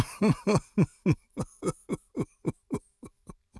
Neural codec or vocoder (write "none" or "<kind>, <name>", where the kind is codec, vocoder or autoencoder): none